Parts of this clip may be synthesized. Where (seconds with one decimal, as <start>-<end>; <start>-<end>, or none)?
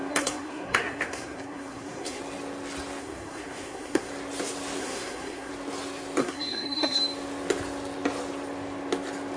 0.0-2.2; 3.0-4.1; 4.8-5.5; 6.2-7.0